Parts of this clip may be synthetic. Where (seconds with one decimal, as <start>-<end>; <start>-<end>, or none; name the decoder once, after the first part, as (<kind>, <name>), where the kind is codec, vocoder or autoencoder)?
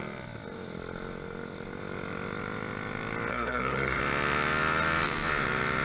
3.3-4.0 (codec, SNAC)